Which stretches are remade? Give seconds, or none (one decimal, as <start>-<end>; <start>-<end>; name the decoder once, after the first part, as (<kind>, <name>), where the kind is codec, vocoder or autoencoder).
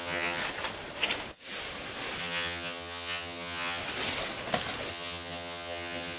0.0-0.4 (vocoder, HiFi-GAN); 2.2-3.8; 4.9-6.2